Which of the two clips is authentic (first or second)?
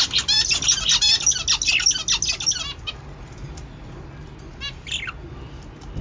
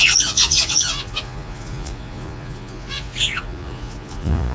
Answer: first